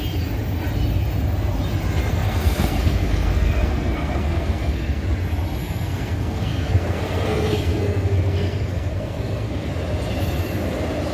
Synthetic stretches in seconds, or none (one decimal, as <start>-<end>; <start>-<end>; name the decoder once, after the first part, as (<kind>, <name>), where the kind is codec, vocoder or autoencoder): 2.1-5.0 (codec, SNAC); 5.6-9.7